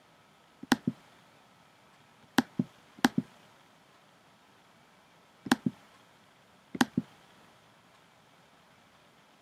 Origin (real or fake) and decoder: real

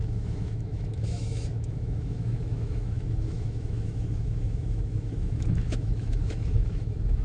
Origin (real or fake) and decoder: fake, autoencoder, DAC-VAE